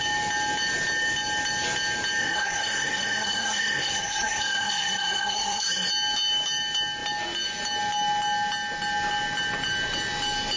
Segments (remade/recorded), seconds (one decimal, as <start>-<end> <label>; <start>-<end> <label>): 0.0-2.2 recorded; 2.2-5.9 remade; 5.9-10.6 recorded